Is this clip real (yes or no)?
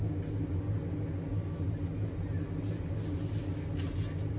yes